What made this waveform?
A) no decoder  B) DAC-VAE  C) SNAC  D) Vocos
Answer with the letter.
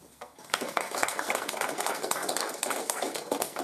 C